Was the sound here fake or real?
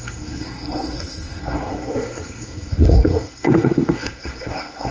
fake